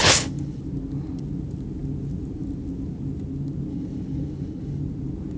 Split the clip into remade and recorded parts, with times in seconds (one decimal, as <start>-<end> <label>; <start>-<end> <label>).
0.0-0.6 remade; 0.6-3.7 recorded; 3.7-4.8 remade; 4.8-5.4 recorded

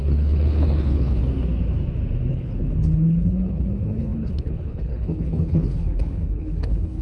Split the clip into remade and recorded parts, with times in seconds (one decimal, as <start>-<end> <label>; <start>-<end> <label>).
0.0-1.2 remade; 1.2-2.3 recorded; 2.3-7.0 remade

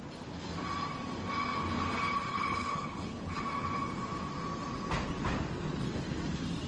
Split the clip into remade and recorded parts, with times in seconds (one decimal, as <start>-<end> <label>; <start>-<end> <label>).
0.0-2.3 recorded; 2.3-3.4 remade; 3.4-6.7 recorded

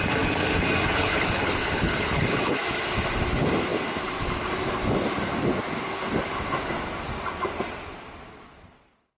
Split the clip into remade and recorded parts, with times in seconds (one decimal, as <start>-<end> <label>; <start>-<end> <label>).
0.0-0.9 recorded; 0.9-2.6 remade; 2.6-9.2 recorded

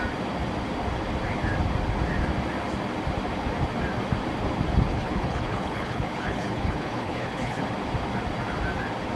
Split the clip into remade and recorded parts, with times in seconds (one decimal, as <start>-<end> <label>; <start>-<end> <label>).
0.0-4.9 recorded; 4.9-7.6 remade; 7.6-9.2 recorded

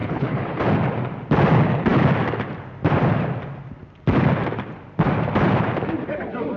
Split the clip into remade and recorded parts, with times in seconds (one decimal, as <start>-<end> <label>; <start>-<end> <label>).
0.0-0.6 remade; 0.6-6.6 recorded

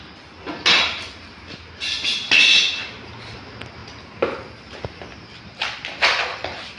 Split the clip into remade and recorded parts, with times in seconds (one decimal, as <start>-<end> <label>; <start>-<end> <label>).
0.0-6.8 recorded

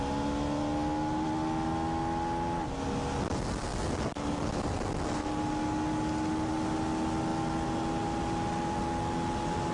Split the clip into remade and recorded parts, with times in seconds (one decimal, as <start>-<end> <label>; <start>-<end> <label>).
0.0-9.7 recorded